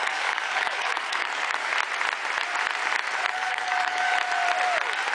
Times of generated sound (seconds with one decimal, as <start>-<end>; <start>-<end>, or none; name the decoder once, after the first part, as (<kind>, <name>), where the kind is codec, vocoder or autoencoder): 0.0-1.7 (codec, DAC); 3.3-4.1